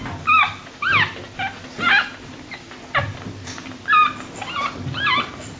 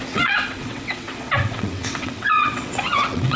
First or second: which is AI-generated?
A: second